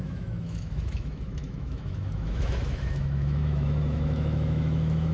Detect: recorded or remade remade